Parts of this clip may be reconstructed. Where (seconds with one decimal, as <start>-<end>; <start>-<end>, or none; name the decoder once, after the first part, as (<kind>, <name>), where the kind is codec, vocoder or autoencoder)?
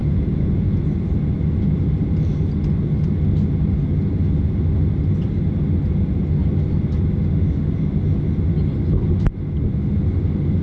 0.0-0.8 (vocoder, Vocos)